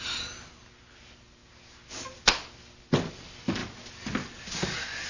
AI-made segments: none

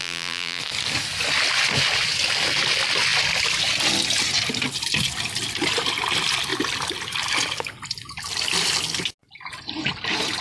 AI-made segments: 0.0-0.6 (vocoder, BigVGAN v2)

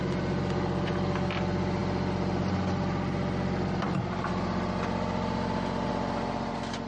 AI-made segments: none